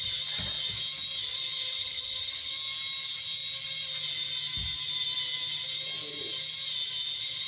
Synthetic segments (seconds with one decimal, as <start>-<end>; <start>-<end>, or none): 1.8-2.5